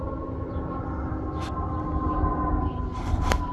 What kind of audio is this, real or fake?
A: real